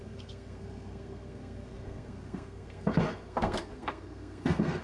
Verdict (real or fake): fake